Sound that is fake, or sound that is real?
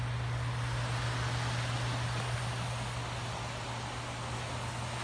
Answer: real